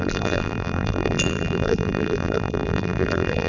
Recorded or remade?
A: remade